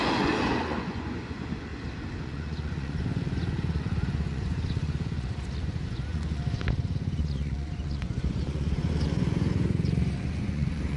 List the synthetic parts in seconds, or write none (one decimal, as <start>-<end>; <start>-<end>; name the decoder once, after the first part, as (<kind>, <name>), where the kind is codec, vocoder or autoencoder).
0.0-1.7 (vocoder, Vocos); 2.2-11.0